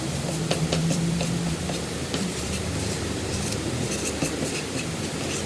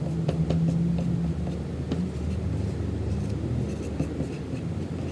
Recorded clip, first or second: second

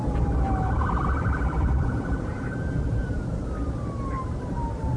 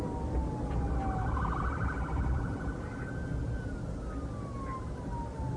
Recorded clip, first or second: second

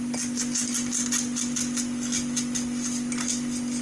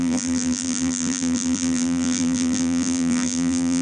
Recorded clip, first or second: first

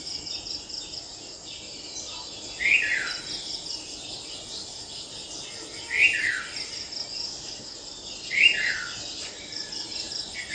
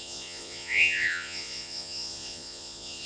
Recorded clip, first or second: first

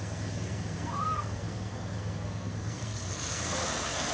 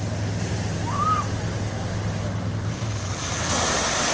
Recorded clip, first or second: second